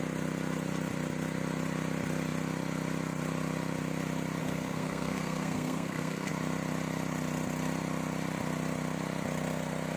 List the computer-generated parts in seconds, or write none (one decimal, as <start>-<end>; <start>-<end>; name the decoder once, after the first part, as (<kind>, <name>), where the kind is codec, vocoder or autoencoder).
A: 4.4-6.3 (codec, SNAC)